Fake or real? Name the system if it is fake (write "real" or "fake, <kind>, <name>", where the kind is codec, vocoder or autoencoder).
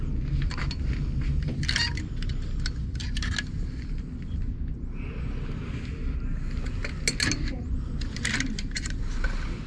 real